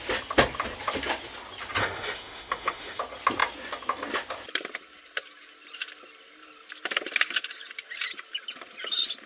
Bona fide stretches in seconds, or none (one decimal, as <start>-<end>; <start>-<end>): 0.0-1.8; 3.0-9.3